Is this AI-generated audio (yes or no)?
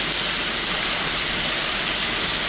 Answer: no